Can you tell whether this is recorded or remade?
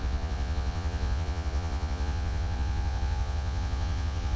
remade